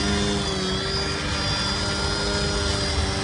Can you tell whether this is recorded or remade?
recorded